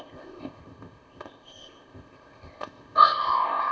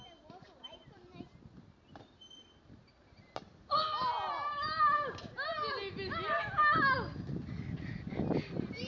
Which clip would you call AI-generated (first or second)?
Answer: first